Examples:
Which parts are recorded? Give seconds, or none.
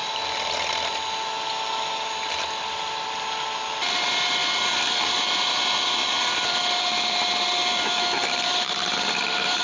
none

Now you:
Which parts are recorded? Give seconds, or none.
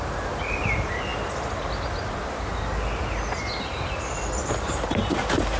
0.0-5.6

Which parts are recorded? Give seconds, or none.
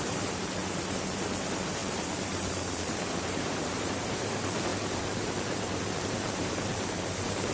none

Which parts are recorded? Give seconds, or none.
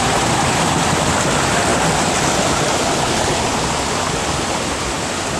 0.0-5.4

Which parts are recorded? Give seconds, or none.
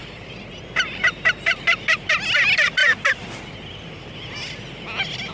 2.1-5.3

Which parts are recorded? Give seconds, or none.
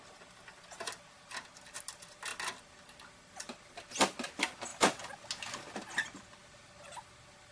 0.0-7.5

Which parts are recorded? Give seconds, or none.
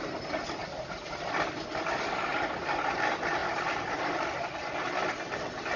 0.0-5.8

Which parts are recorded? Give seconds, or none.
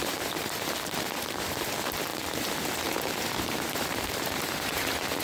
none